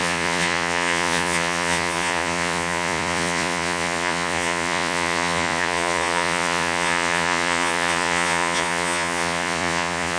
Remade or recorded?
remade